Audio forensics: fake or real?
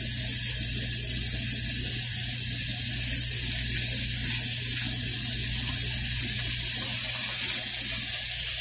real